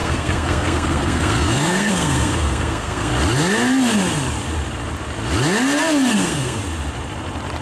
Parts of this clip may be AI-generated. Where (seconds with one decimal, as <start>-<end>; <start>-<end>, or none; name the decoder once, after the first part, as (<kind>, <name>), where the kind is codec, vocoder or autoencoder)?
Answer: 0.0-3.1 (codec, SNAC); 6.1-6.6